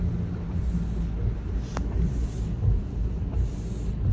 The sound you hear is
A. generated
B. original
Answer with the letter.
B